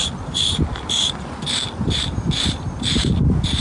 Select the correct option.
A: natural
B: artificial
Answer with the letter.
A